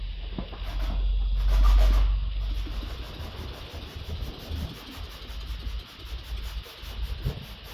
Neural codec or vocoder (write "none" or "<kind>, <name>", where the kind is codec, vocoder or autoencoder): none